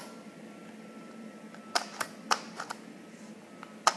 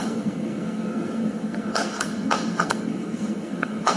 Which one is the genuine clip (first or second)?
first